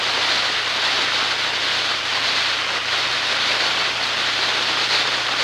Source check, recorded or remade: recorded